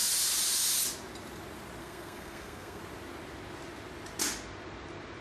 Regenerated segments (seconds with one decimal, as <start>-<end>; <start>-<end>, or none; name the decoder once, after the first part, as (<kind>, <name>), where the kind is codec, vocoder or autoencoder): 1.8-2.8 (codec, SNAC)